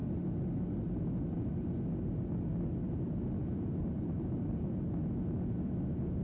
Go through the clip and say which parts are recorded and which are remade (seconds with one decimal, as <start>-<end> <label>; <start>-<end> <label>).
0.0-6.2 recorded